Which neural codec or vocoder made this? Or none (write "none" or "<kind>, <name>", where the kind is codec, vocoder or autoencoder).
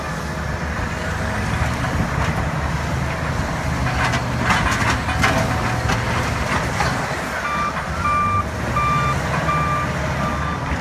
none